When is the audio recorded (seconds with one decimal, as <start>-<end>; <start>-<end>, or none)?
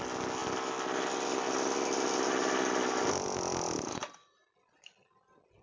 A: 0.0-5.6